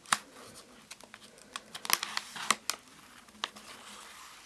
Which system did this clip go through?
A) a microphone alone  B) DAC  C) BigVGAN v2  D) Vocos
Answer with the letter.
A